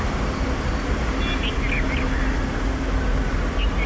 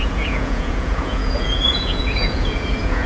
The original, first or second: first